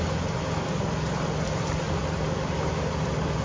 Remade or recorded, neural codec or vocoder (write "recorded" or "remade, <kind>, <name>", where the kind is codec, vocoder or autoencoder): remade, vocoder, BigVGAN v2